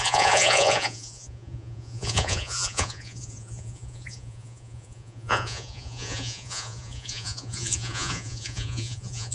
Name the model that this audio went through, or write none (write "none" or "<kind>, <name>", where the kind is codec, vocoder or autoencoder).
vocoder, Vocos